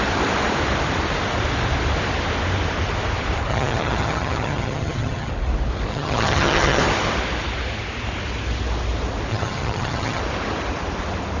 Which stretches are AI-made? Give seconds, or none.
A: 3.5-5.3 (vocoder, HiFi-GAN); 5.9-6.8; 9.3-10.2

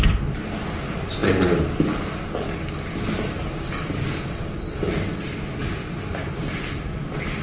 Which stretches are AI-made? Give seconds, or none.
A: 5.6-6.7 (vocoder, BigVGAN v2)

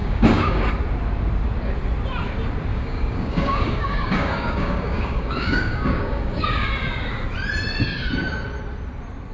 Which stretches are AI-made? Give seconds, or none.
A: 0.0-0.7 (codec, DAC); 2.7-6.7

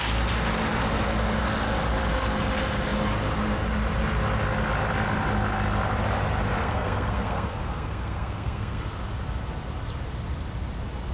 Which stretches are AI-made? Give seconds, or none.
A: 6.6-8.8 (codec, SNAC)

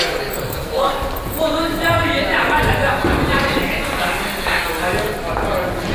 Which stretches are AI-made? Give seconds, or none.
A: 0.4-0.9 (codec, SNAC)

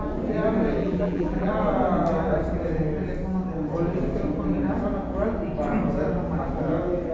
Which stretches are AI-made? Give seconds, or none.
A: 0.8-1.5 (vocoder, BigVGAN v2)